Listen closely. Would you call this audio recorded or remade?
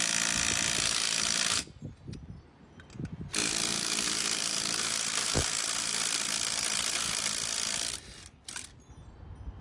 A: recorded